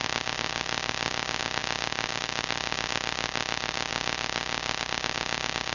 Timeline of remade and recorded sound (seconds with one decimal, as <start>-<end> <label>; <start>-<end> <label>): 0.0-5.7 recorded